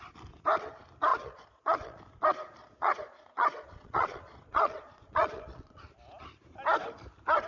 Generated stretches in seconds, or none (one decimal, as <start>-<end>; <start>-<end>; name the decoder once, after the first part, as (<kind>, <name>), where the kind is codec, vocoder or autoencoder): 1.1-2.0 (vocoder, Vocos); 2.6-5.8